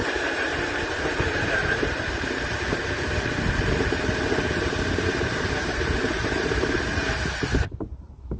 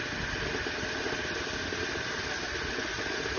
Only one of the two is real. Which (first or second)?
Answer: second